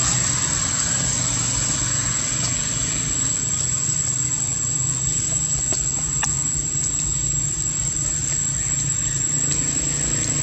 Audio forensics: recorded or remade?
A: recorded